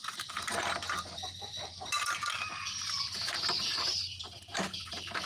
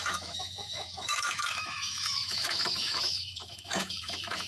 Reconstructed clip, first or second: second